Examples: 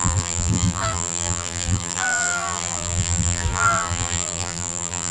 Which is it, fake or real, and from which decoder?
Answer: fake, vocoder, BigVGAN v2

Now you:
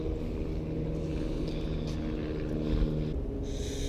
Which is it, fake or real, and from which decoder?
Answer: real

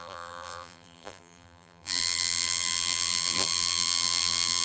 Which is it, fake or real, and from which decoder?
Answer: fake, vocoder, BigVGAN v2